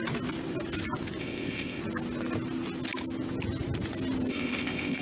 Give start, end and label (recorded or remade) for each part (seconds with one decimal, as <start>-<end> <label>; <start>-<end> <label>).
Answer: 0.0-1.2 recorded; 1.2-1.8 remade; 1.8-4.3 recorded; 4.3-5.0 remade